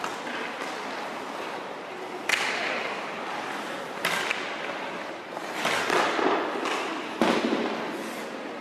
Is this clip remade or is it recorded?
recorded